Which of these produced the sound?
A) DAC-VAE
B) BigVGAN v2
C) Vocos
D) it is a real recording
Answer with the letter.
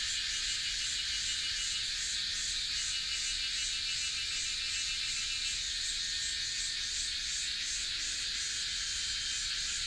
D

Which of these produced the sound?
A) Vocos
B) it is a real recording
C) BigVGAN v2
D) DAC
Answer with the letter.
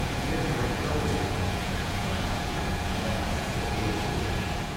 A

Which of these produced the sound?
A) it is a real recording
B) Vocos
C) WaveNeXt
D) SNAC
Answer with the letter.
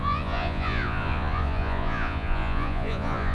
B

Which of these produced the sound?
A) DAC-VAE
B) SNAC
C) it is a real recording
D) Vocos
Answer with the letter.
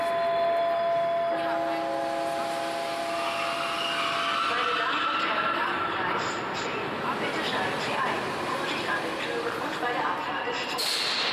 C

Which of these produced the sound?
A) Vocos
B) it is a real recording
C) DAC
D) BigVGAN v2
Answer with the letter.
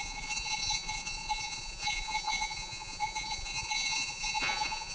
A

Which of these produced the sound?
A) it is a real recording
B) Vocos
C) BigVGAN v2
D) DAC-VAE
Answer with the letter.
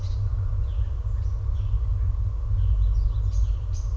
A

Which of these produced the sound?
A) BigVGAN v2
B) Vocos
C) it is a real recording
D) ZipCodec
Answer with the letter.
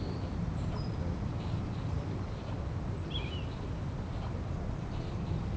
C